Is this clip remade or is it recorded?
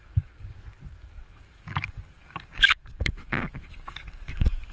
remade